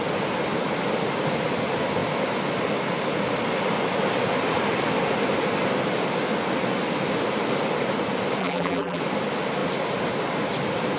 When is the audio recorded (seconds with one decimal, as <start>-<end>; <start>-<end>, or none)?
0.0-8.4; 9.0-11.0